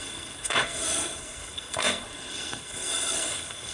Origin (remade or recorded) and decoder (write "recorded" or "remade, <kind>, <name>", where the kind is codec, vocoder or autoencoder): remade, codec, SNAC